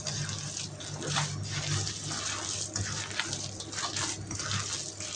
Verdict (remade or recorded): recorded